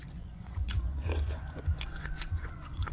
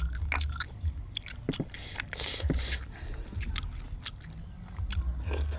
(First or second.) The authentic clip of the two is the second